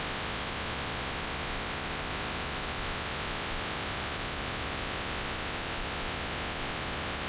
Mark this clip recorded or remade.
recorded